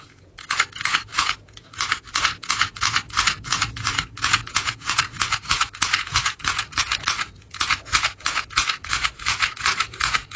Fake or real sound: fake